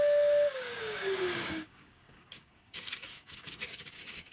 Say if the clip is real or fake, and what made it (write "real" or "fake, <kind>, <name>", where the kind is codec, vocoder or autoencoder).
fake, codec, DAC